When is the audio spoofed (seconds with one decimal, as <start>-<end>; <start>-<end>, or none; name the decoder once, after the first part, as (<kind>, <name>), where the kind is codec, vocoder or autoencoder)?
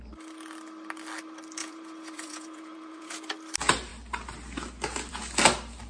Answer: 1.6-3.3 (vocoder, Vocos)